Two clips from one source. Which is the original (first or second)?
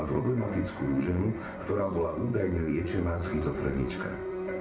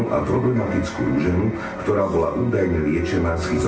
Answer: second